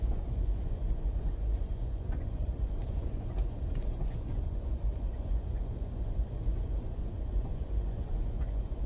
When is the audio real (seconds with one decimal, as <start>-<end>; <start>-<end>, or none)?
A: none